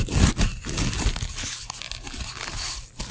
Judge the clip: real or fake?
real